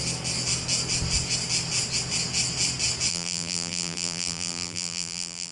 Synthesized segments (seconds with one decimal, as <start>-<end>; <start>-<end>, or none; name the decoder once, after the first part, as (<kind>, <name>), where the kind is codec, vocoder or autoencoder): 3.1-5.5 (vocoder, BigVGAN v2)